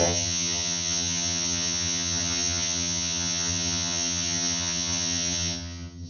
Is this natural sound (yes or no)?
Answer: no